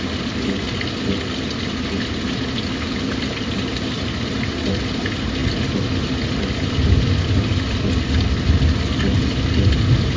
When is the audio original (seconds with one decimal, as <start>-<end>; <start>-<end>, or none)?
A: 0.0-10.2